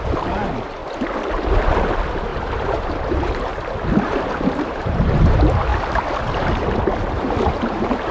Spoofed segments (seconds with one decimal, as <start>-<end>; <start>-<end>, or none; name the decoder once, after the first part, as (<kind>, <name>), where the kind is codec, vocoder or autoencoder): 0.0-0.8 (vocoder, BigVGAN v2); 1.3-3.5; 4.4-5.7; 7.1-8.1